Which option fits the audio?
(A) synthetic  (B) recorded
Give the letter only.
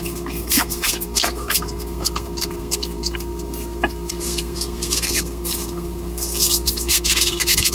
A